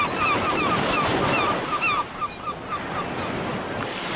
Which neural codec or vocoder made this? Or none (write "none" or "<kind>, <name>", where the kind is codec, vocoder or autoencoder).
none